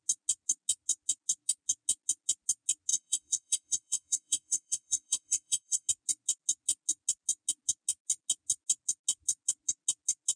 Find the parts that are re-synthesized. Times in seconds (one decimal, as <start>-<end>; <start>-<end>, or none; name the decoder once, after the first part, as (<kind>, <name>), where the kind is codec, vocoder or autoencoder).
2.9-5.9 (vocoder, WaveNeXt)